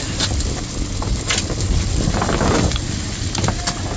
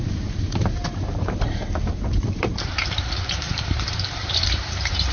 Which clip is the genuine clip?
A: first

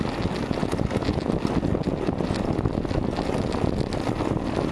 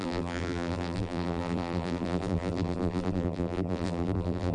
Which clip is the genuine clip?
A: first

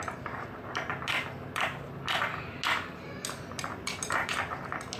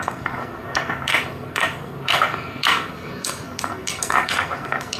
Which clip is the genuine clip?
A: first